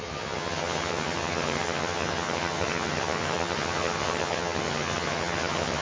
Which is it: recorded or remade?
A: remade